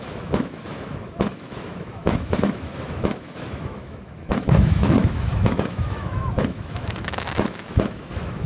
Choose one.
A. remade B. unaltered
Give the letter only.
A